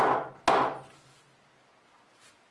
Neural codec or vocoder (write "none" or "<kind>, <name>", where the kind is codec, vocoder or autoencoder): none